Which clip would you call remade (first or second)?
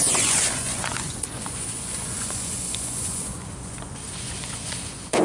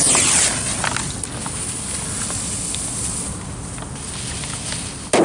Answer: first